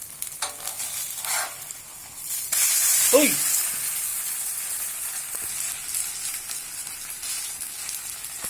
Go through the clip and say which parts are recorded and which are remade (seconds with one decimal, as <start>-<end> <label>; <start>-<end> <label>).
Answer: 0.0-8.5 recorded